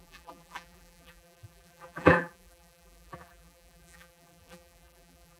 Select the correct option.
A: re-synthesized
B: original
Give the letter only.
A